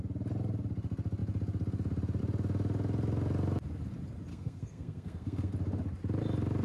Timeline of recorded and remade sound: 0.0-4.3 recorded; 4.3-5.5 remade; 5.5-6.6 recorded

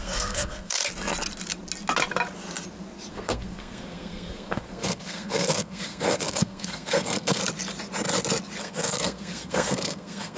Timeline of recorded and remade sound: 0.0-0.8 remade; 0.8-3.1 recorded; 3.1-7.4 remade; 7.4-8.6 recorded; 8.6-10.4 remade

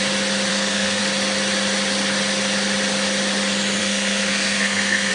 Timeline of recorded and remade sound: 0.0-0.5 recorded; 0.5-1.0 remade; 1.0-3.8 recorded; 3.8-5.1 remade

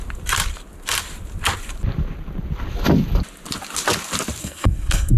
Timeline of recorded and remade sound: 0.0-4.4 recorded; 4.4-5.2 remade

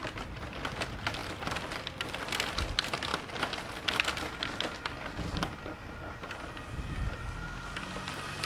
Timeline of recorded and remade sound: 0.0-8.5 recorded

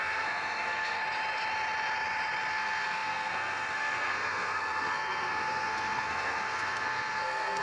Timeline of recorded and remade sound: 0.0-1.0 remade; 1.0-2.5 recorded; 2.5-7.6 remade

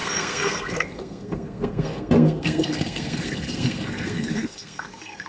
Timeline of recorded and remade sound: 0.0-5.3 remade